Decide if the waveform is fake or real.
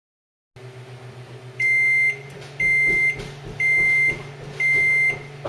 real